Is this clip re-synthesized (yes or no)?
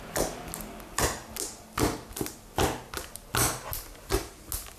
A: no